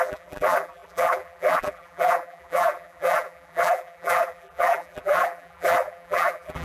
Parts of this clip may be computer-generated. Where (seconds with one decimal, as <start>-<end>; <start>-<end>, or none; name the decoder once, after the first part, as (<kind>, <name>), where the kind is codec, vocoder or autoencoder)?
0.0-6.6 (vocoder, BigVGAN v2)